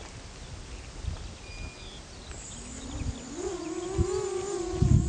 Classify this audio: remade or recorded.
recorded